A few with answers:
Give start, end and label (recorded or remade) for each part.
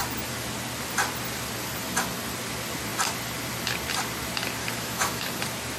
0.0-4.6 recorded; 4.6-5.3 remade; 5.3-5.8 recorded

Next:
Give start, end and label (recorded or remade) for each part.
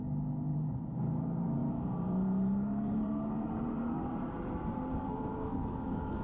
0.0-0.5 recorded; 0.5-1.1 remade; 1.1-1.6 recorded; 1.6-5.3 remade; 5.3-6.2 recorded